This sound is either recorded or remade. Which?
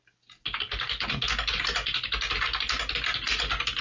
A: recorded